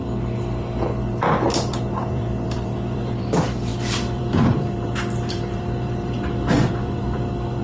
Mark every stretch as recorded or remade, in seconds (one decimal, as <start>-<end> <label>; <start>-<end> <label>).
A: 0.0-1.1 recorded; 1.1-7.6 remade